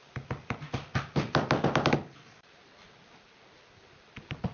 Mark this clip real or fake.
real